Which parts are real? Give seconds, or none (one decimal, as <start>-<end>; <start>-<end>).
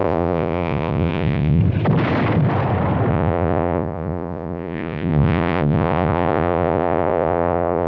1.6-3.1